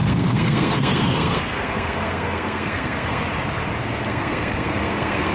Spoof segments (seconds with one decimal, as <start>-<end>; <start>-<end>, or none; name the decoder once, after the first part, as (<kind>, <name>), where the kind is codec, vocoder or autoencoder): 0.0-3.2 (codec, SNAC); 3.8-5.3